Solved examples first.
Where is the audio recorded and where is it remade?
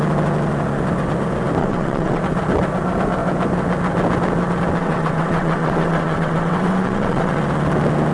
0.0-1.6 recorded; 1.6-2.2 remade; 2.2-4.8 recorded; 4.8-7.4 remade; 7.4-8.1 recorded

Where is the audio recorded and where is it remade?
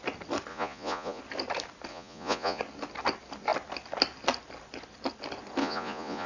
0.0-0.5 recorded; 0.5-1.2 remade; 1.2-1.9 recorded; 1.9-2.6 remade; 2.6-5.6 recorded; 5.6-6.3 remade